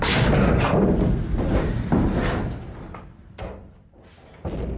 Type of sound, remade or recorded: recorded